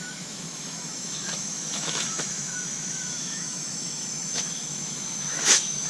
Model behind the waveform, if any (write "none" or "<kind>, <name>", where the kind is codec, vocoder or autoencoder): autoencoder, DAC-VAE